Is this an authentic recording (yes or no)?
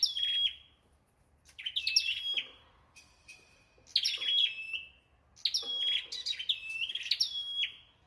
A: yes